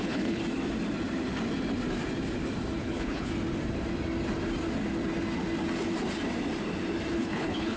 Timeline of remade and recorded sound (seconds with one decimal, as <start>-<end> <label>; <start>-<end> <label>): 0.0-0.4 remade; 0.4-2.8 recorded; 2.8-3.3 remade; 3.3-7.1 recorded; 7.1-7.8 remade